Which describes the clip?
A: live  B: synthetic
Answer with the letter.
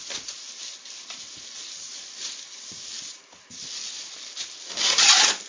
A